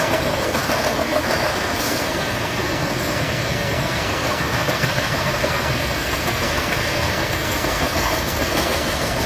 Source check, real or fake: fake